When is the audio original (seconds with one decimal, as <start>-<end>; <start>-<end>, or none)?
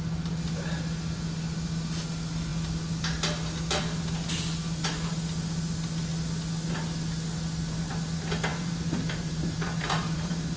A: 0.0-8.5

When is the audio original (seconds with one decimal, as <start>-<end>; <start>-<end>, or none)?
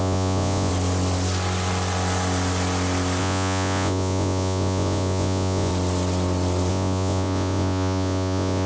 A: 0.7-3.2; 5.7-6.7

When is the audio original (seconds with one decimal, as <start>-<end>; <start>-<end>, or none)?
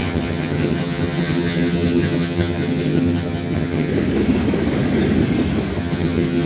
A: 3.9-5.8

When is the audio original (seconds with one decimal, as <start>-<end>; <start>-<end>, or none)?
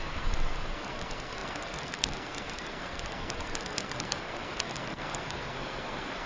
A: none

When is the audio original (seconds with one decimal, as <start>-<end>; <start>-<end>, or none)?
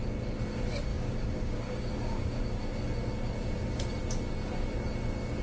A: 0.0-0.9; 2.4-5.4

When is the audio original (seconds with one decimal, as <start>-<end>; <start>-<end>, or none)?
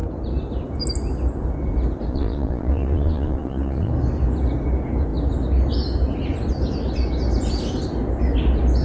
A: 0.0-2.1; 3.9-8.8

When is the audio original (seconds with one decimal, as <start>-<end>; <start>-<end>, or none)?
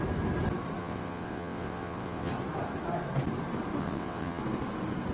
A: 0.0-0.8; 2.3-3.8; 4.4-5.1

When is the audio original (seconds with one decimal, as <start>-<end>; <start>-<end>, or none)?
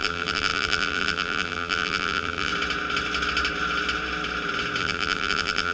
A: 2.5-4.8